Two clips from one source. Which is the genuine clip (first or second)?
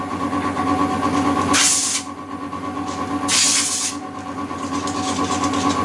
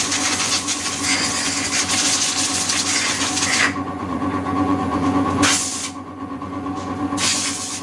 first